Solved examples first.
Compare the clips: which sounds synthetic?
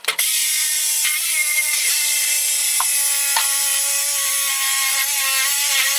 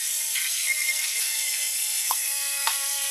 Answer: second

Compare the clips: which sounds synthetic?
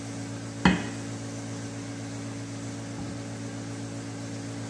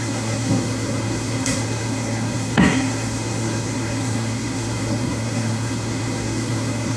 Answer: second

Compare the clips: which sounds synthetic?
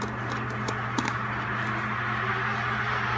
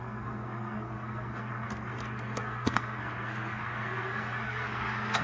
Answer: second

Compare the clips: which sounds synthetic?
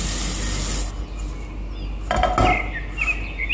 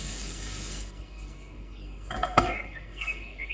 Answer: second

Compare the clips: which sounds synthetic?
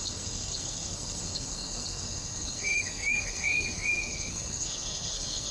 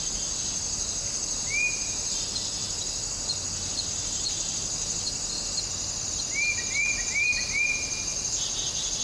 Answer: first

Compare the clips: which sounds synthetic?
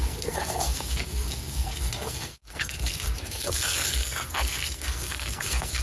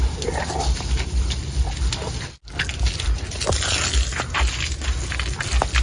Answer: first